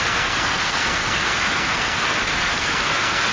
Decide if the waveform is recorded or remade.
remade